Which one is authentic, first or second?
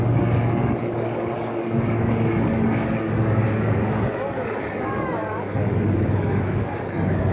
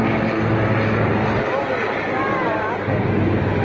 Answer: second